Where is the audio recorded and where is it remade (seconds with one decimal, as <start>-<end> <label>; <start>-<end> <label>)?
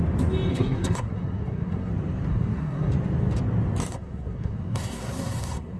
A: 0.0-0.5 recorded; 0.5-1.9 remade; 1.9-2.3 recorded; 2.3-2.9 remade; 2.9-3.9 recorded; 3.9-5.8 remade